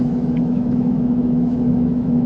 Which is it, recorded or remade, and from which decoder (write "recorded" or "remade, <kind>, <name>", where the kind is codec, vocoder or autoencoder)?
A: remade, autoencoder, DAC-VAE